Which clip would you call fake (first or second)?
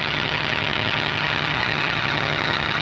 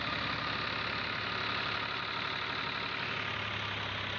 first